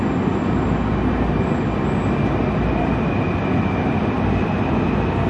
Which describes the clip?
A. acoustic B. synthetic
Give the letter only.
A